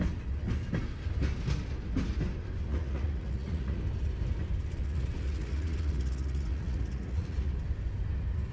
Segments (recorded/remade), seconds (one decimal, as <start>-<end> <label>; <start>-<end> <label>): 0.0-2.7 recorded; 2.7-3.8 remade; 3.8-4.8 recorded; 4.8-7.5 remade; 7.5-8.5 recorded